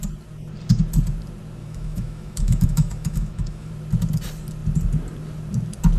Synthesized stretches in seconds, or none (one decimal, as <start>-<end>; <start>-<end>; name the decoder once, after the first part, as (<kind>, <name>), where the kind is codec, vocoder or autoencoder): 1.6-3.7 (autoencoder, DAC-VAE)